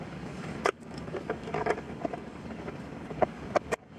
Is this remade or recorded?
remade